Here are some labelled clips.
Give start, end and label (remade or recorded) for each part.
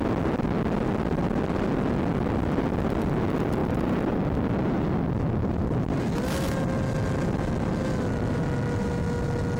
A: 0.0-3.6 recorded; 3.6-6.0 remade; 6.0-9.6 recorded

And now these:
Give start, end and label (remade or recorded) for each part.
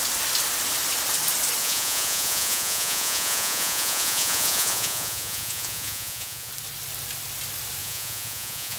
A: 0.0-1.6 recorded; 1.6-6.5 remade; 6.5-7.8 recorded; 7.8-8.8 remade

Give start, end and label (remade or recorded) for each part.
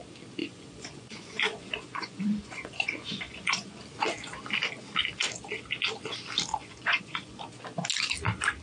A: 0.0-0.4 recorded; 0.4-3.8 remade; 3.8-6.6 recorded; 6.6-7.4 remade; 7.4-8.6 recorded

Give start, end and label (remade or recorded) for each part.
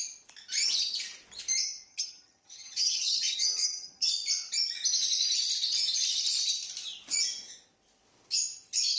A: 0.0-1.9 recorded; 1.9-4.1 remade; 4.1-9.0 recorded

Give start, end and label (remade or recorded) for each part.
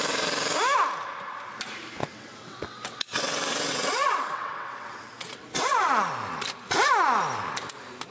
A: 0.0-2.0 recorded; 2.0-6.1 remade; 6.1-8.1 recorded